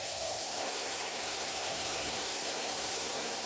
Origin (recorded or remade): remade